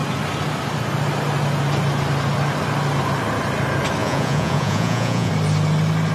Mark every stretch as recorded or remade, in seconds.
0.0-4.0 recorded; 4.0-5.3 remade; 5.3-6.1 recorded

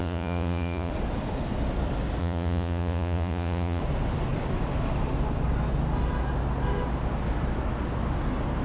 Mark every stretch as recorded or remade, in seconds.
0.0-0.9 remade; 0.9-2.2 recorded; 2.2-3.8 remade; 3.8-8.6 recorded

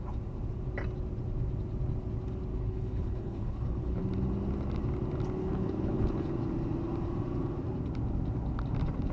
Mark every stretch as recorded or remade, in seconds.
0.0-2.5 recorded; 2.5-4.0 remade; 4.0-5.4 recorded; 5.4-6.4 remade; 6.4-9.1 recorded

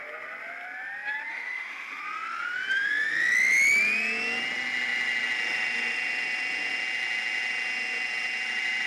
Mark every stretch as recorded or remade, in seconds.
0.0-1.3 recorded; 1.3-2.0 remade; 2.0-8.9 recorded

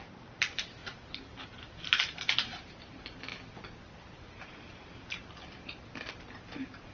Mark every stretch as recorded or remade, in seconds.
0.0-3.3 remade; 3.3-4.2 recorded; 4.2-6.9 remade

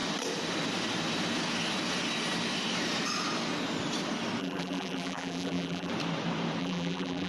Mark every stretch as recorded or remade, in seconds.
0.0-4.4 recorded; 4.4-5.9 remade; 5.9-6.6 recorded; 6.6-7.3 remade

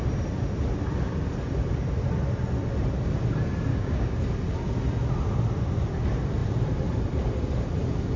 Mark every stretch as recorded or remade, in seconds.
0.0-3.7 recorded; 3.7-4.2 remade; 4.2-8.2 recorded

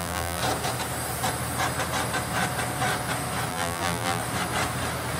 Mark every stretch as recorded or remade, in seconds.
0.0-0.4 remade; 0.4-3.5 recorded; 3.5-4.2 remade; 4.2-5.2 recorded